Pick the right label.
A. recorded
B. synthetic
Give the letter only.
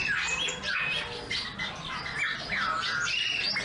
A